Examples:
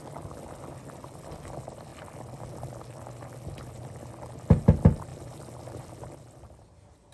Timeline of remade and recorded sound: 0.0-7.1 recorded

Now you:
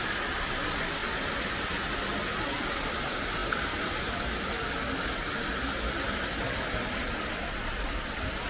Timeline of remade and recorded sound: 0.0-8.5 recorded

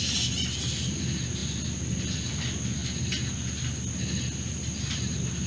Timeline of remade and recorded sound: 0.0-5.5 recorded

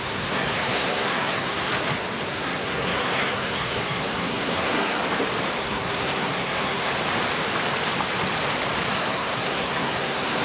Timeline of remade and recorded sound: 0.0-1.7 remade; 1.7-2.3 recorded; 2.3-5.0 remade; 5.0-5.6 recorded; 5.6-6.9 remade; 6.9-8.9 recorded; 8.9-10.4 remade